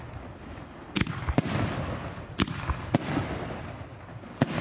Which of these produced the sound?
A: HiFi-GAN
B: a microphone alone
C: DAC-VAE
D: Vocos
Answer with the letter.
B